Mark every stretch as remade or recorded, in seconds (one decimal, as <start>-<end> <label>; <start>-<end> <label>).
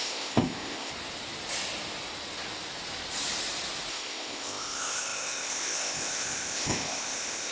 0.0-0.9 remade; 0.9-3.9 recorded; 3.9-7.5 remade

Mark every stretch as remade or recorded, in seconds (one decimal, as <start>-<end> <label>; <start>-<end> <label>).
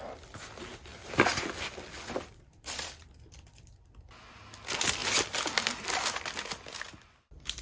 0.0-7.6 recorded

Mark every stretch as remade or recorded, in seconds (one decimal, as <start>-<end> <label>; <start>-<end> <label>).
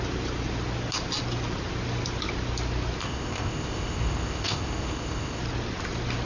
0.0-3.0 recorded; 3.0-5.4 remade; 5.4-6.2 recorded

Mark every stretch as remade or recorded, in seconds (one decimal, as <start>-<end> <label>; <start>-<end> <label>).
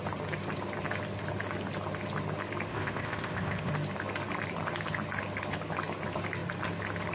0.0-2.7 recorded; 2.7-3.7 remade; 3.7-7.1 recorded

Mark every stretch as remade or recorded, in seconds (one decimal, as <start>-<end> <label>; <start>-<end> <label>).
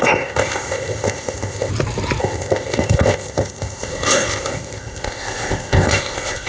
0.0-1.7 remade; 1.7-2.2 recorded; 2.2-6.5 remade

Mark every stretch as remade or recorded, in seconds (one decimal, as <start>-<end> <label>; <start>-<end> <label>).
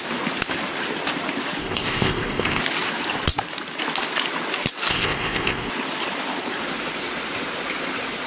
0.0-1.6 recorded; 1.6-2.6 remade; 2.6-4.9 recorded; 4.9-5.7 remade; 5.7-8.3 recorded